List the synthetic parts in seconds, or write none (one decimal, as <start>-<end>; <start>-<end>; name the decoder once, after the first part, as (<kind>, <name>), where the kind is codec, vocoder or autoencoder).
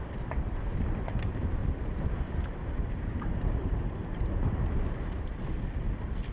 1.6-5.4 (vocoder, BigVGAN v2)